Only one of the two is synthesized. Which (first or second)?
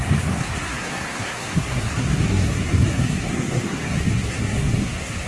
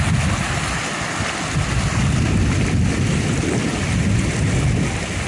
first